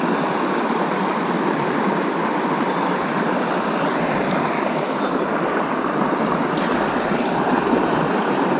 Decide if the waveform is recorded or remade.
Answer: remade